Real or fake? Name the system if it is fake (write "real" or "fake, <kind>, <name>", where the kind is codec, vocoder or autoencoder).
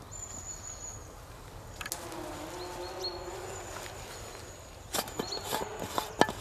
real